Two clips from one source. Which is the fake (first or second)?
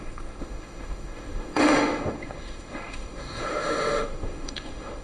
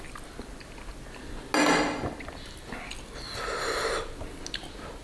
first